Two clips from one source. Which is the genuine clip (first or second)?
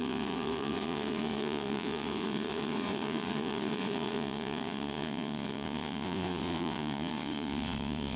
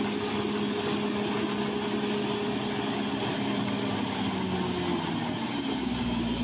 second